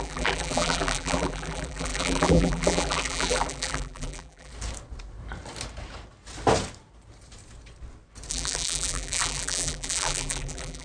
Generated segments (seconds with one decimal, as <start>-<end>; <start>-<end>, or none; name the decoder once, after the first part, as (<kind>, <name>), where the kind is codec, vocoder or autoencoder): 0.0-4.5 (vocoder, BigVGAN v2); 8.3-10.8